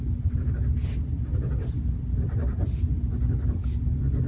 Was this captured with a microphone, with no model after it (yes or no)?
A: yes